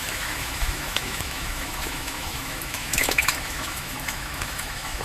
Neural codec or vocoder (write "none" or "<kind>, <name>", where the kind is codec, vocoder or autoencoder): autoencoder, DAC-VAE